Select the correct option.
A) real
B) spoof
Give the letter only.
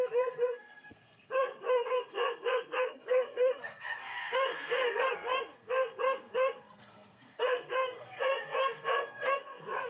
B